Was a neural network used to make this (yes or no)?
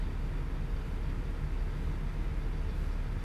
no